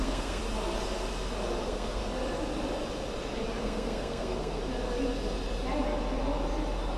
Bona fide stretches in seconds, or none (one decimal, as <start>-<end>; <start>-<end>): 0.4-1.6; 2.0-3.6; 4.6-7.0